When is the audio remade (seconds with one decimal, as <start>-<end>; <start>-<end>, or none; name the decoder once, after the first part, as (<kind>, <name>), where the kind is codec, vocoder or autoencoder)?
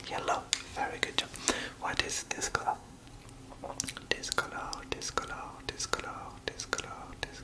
2.2-3.1 (codec, SNAC)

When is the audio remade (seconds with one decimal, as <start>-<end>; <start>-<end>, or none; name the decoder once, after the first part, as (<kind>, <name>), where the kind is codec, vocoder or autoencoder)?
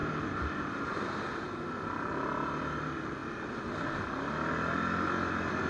none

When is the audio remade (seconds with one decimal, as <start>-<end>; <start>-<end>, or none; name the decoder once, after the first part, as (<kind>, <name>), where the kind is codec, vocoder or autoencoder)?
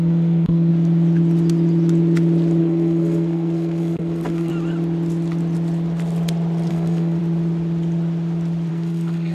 0.0-0.7 (codec, SNAC); 2.6-4.5; 6.7-7.2; 8.7-9.3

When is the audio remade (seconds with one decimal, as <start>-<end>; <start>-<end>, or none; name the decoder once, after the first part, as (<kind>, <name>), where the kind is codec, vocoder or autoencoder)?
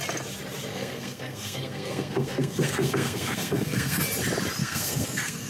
0.7-4.0 (codec, SNAC); 4.6-5.5